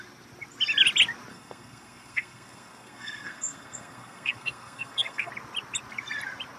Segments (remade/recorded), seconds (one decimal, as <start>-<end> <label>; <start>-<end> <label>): 0.0-1.3 recorded; 1.3-5.3 remade; 5.3-6.6 recorded